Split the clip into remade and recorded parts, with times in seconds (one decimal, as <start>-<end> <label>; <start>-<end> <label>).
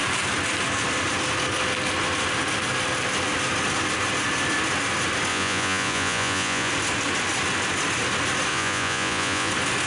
0.0-5.3 recorded; 5.3-6.7 remade; 6.7-8.5 recorded; 8.5-9.5 remade; 9.5-9.9 recorded